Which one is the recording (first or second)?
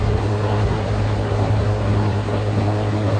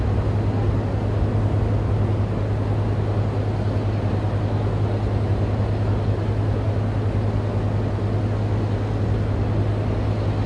second